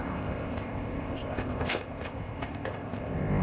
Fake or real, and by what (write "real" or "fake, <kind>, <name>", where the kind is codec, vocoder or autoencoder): fake, codec, ZipCodec